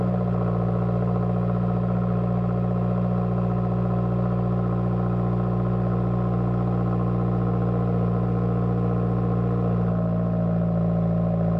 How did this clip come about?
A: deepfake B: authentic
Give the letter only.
B